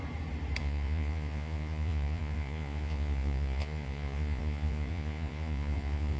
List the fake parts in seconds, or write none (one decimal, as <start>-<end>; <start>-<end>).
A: 0.6-6.2